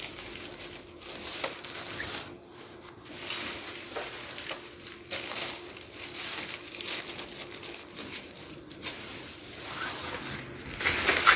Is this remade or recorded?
recorded